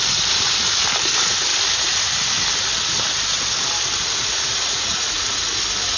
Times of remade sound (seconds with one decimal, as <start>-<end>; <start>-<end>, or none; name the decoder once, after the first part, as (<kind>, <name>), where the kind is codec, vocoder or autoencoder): 4.0-5.4 (vocoder, Vocos)